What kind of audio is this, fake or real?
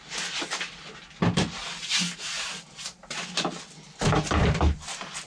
real